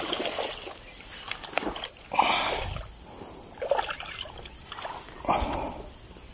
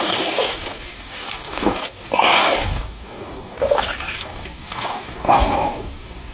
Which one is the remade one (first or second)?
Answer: second